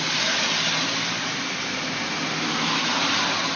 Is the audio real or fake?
real